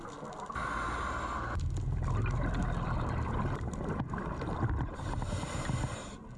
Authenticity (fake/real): real